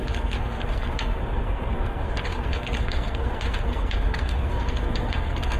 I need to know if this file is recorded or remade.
remade